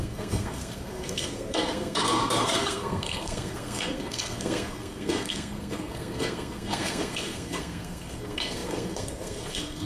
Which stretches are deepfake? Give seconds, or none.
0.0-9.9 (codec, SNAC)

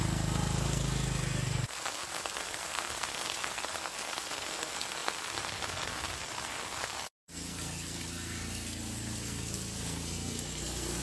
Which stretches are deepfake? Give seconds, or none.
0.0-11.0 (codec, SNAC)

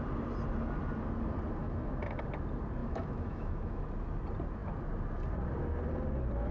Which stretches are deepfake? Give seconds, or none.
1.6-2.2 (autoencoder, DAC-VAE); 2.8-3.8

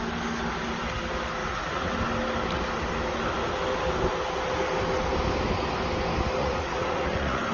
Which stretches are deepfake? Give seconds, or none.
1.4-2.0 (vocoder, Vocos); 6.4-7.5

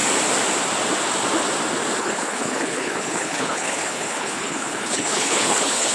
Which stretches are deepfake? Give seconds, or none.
2.0-5.9 (codec, HILCodec)